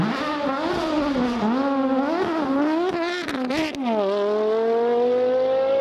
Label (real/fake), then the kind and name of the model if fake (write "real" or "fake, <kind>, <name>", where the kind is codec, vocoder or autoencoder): real